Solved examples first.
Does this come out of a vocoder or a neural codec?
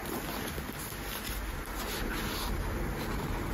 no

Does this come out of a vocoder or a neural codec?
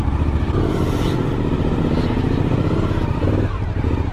yes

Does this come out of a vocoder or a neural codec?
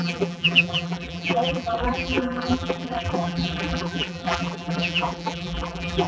yes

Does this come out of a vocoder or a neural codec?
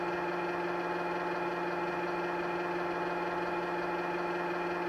no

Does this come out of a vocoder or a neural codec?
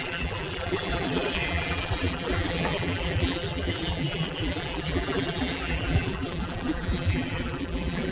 yes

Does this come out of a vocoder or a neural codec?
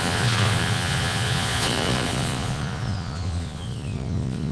yes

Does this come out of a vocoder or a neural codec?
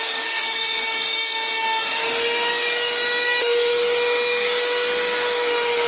yes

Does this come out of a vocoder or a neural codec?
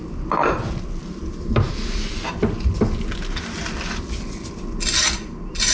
yes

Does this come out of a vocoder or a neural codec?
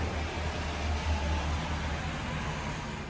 no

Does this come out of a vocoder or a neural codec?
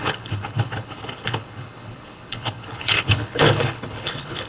yes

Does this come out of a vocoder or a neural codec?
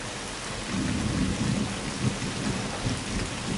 no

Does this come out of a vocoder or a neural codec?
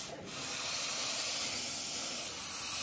no